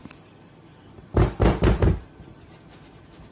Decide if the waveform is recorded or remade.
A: recorded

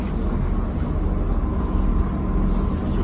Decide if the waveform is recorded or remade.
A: recorded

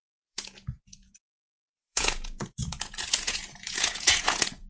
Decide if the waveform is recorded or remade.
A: remade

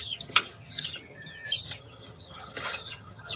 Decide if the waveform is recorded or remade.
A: remade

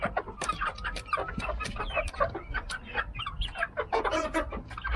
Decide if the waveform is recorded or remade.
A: recorded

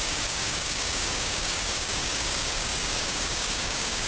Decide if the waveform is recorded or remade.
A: remade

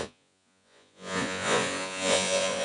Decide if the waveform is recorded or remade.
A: remade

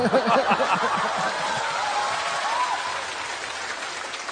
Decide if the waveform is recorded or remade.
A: recorded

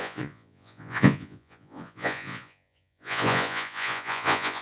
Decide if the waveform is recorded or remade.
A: remade